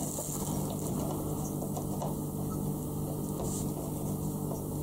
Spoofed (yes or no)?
no